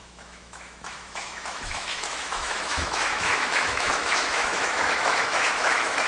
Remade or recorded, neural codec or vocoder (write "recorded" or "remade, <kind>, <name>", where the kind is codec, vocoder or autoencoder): remade, autoencoder, DAC-VAE